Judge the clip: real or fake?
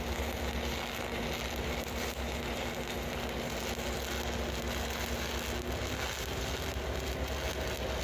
real